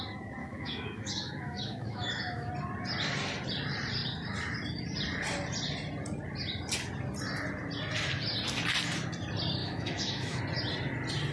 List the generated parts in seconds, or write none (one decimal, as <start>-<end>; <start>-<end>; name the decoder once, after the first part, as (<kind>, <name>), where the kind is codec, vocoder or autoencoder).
0.4-2.5 (autoencoder, DAC-VAE); 9.6-10.4